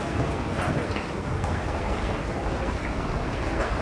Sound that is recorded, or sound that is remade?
remade